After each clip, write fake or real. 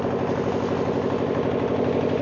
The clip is real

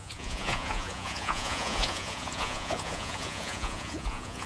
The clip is fake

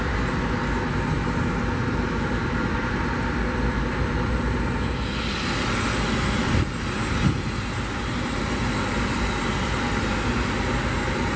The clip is real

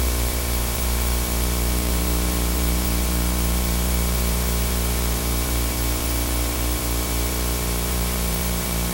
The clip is fake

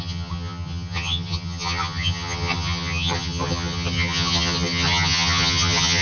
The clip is fake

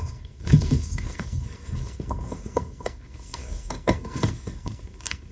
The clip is fake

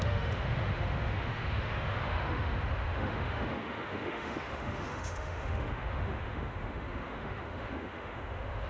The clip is fake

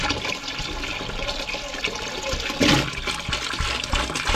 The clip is real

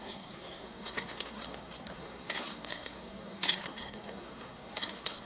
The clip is fake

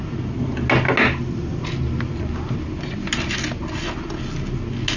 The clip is real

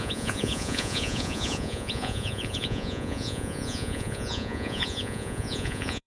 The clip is fake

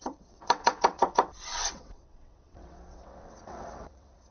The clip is fake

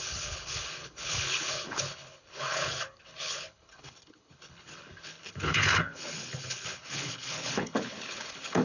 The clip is fake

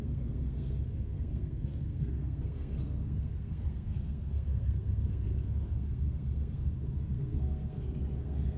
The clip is fake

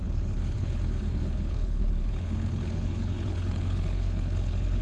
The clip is fake